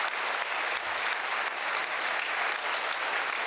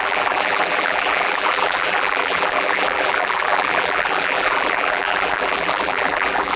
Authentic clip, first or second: first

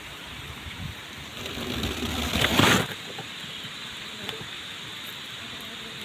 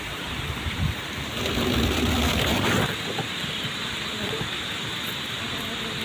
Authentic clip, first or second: second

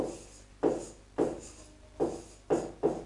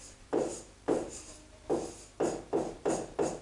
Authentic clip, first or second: first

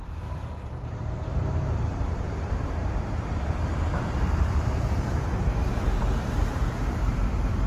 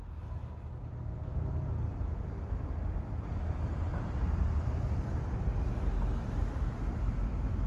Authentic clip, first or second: second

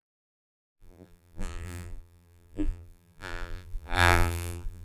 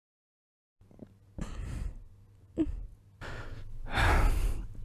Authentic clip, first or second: second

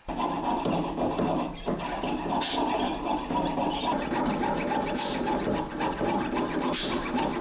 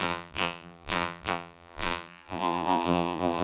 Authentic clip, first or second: first